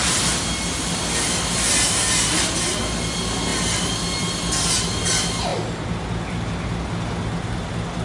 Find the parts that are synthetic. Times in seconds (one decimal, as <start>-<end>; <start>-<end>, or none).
none